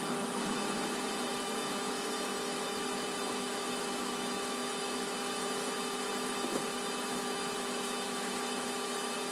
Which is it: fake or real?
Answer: fake